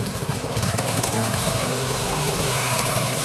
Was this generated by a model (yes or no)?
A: yes